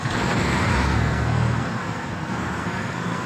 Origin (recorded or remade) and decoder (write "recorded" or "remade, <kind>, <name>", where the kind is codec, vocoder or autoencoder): remade, codec, SNAC